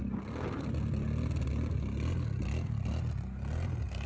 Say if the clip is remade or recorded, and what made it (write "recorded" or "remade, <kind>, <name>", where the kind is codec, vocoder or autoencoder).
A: recorded